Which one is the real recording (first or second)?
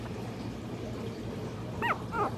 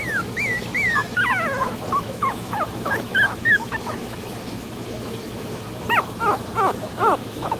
first